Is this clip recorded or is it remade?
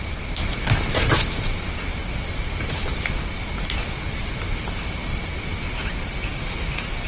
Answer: recorded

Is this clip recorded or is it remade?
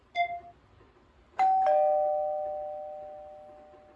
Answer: recorded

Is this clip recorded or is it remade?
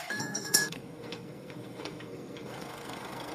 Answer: remade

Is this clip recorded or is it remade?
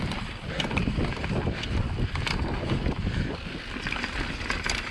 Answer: recorded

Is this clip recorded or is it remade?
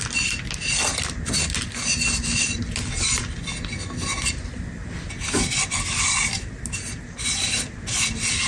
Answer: recorded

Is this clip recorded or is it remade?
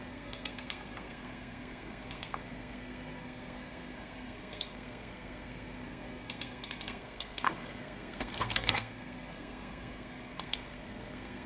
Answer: remade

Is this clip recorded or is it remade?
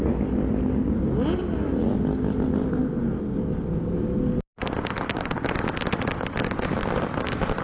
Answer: recorded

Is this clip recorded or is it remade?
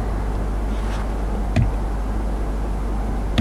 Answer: recorded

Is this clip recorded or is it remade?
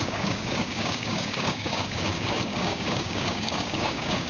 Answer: remade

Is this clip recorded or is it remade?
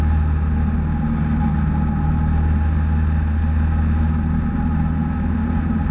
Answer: recorded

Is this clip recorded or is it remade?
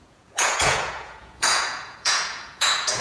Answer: remade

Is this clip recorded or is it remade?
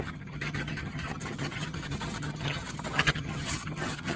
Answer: remade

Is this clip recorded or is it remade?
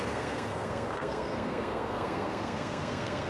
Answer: remade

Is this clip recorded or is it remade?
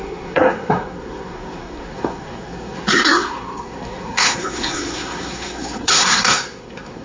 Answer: remade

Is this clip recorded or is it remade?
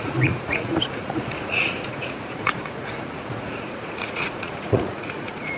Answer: remade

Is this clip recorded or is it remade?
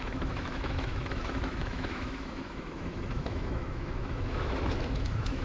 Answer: remade